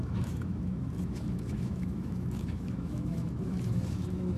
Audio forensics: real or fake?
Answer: fake